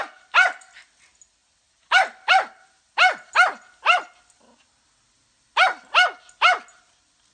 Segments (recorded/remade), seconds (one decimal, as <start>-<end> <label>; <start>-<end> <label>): 0.0-7.3 recorded